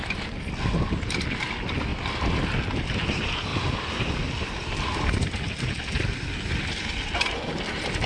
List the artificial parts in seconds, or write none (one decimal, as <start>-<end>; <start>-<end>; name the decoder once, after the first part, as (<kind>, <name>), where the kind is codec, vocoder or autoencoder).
1.9-2.6 (vocoder, BigVGAN v2); 3.5-6.3